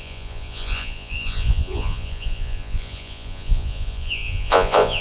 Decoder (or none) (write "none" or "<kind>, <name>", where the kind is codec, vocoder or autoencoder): vocoder, Vocos